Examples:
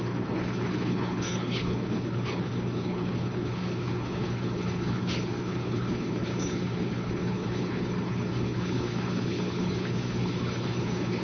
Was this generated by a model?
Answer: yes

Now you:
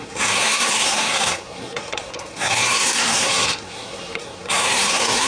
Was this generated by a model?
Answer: yes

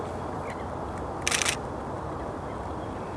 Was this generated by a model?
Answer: no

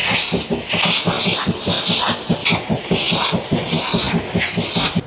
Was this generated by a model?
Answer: no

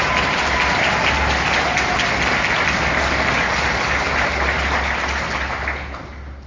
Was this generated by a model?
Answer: no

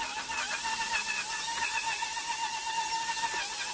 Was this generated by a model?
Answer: no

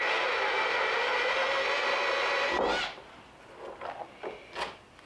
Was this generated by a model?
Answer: no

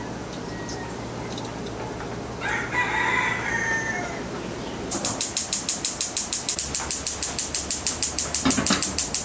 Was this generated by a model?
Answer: no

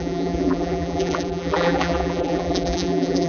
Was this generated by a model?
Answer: yes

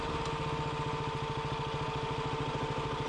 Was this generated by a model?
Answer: no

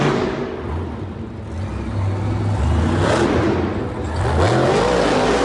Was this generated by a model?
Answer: no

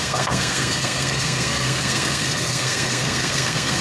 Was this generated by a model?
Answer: yes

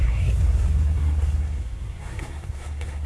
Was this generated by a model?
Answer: yes